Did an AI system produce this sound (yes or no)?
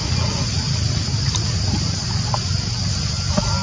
no